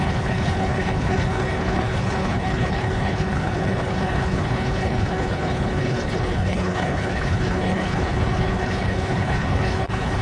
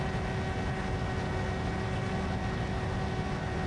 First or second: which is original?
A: second